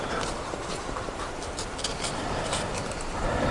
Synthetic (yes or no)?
no